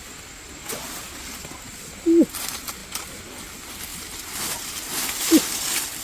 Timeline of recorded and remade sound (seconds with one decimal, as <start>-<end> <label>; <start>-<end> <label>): 0.0-6.0 recorded